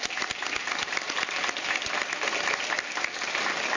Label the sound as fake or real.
real